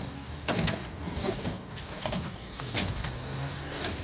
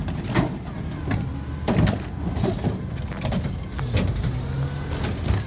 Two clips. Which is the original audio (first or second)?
second